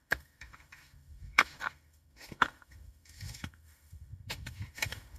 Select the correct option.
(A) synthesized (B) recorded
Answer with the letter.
A